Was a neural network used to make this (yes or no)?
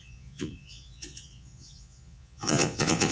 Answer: yes